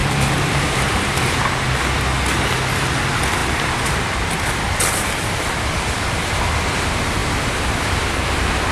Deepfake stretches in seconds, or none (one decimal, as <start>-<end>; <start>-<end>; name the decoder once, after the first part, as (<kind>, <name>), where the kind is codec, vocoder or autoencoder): 0.0-1.4 (vocoder, BigVGAN v2); 3.4-6.4